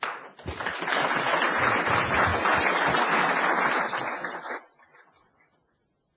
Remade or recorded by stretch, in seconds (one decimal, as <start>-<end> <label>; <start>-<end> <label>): 0.0-6.2 recorded